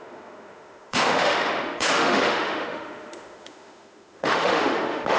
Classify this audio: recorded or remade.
remade